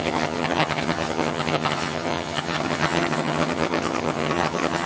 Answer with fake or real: fake